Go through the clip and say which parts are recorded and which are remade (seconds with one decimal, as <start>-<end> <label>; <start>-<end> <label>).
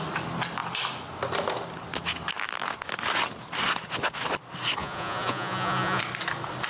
0.0-4.8 recorded; 4.8-6.0 remade; 6.0-6.7 recorded